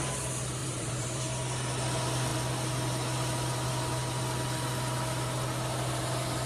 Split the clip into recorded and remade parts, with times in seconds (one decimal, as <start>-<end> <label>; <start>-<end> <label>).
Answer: 0.0-0.6 recorded; 0.6-1.2 remade; 1.2-6.5 recorded